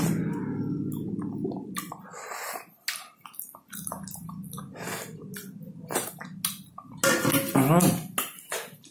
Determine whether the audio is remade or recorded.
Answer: recorded